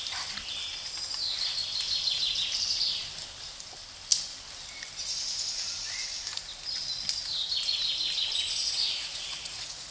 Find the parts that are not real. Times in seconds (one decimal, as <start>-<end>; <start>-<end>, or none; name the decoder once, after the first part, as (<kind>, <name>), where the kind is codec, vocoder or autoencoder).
8.6-9.9 (vocoder, Vocos)